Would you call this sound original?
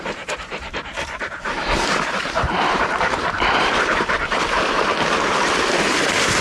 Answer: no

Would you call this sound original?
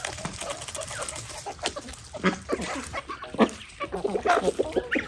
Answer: yes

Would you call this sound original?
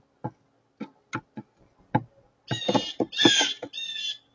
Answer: yes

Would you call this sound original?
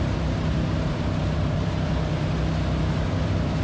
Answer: no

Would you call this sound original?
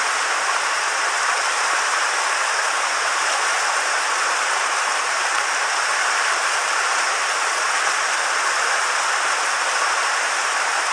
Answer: no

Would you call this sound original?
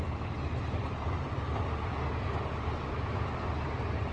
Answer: yes